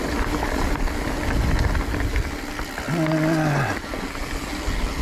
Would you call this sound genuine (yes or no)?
yes